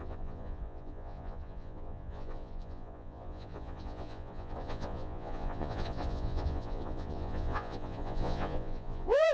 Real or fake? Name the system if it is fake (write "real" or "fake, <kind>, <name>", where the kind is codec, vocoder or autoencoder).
fake, vocoder, Vocos